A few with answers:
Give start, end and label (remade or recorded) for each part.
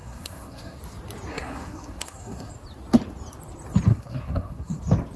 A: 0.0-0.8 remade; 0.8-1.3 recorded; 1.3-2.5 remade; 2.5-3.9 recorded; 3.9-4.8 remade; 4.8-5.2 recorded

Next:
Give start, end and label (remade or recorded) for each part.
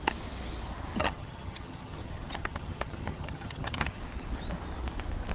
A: 0.0-1.0 recorded; 1.0-4.0 remade; 4.0-5.3 recorded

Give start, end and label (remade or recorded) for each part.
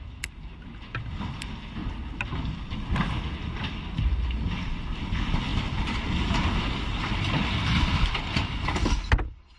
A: 0.0-9.6 recorded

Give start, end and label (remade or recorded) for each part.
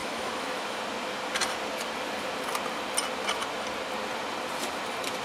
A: 0.0-0.8 remade; 0.8-5.2 recorded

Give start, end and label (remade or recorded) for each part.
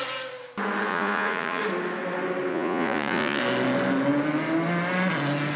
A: 0.0-0.9 recorded; 0.9-1.6 remade; 1.6-2.5 recorded; 2.5-3.4 remade; 3.4-5.6 recorded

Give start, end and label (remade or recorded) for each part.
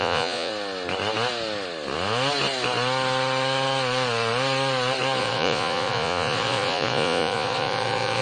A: 0.0-0.5 remade; 0.5-5.2 recorded; 5.2-8.2 remade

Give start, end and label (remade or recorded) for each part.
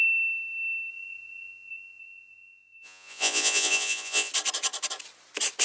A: 0.0-0.9 recorded; 0.9-4.3 remade; 4.3-5.6 recorded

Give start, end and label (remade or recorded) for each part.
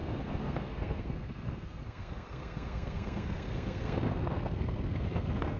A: 0.0-5.6 remade